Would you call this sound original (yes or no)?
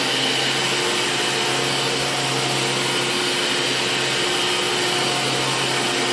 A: yes